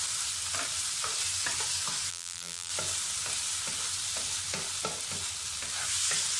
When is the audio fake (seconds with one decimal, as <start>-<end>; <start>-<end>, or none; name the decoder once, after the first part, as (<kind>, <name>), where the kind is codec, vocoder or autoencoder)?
2.1-2.7 (vocoder, BigVGAN v2)